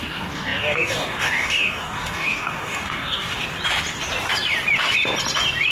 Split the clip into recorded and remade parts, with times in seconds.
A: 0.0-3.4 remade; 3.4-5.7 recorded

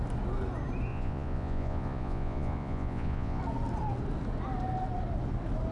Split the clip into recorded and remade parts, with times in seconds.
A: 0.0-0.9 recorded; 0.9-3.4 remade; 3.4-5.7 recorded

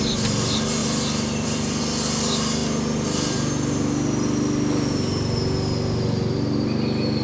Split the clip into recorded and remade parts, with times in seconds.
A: 0.0-0.8 recorded; 0.8-1.8 remade; 1.8-7.2 recorded